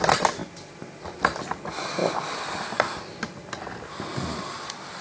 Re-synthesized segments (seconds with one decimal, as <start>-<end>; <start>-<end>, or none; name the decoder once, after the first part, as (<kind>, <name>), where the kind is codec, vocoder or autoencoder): none